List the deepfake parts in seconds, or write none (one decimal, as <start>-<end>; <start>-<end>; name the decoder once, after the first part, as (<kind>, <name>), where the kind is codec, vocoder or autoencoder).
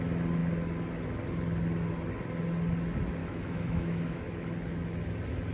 3.2-4.2 (autoencoder, DAC-VAE)